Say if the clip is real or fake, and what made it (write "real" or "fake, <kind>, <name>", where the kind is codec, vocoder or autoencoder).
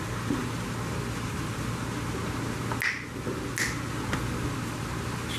real